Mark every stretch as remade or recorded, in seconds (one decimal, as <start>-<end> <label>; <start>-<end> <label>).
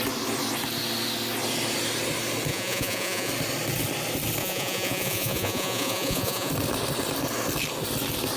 0.0-2.5 recorded; 2.5-3.3 remade; 3.3-4.4 recorded; 4.4-6.5 remade; 6.5-8.4 recorded